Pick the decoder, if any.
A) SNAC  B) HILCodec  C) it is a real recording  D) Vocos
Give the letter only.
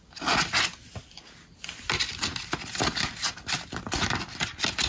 C